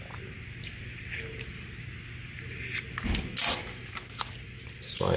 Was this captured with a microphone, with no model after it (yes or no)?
yes